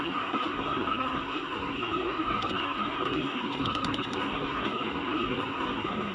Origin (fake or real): fake